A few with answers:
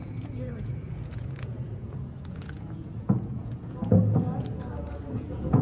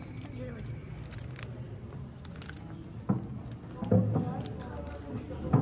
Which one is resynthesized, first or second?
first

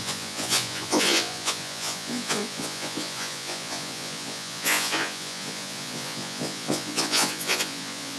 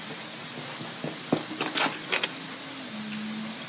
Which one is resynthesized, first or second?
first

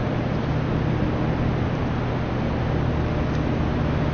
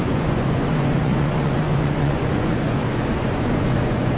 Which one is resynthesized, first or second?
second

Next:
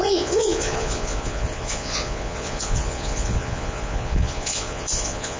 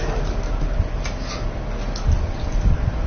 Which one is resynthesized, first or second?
first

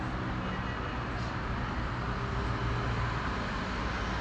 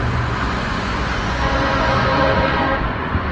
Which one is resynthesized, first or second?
second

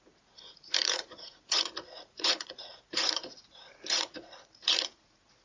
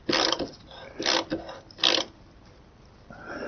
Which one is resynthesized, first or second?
first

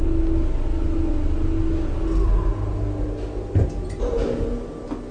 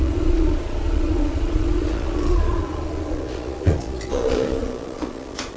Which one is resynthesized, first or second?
second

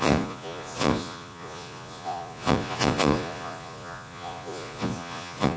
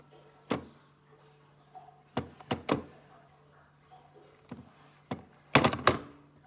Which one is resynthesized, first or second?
first